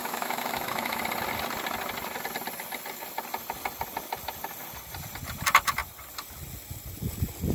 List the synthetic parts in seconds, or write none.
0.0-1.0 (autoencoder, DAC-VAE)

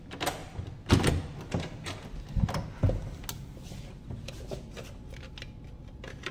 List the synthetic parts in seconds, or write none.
none

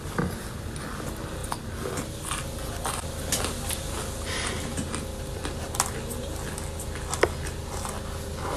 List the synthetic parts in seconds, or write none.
none

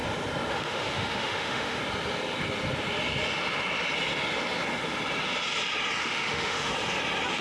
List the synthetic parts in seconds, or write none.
0.5-1.8 (autoencoder, DAC-VAE); 6.0-6.7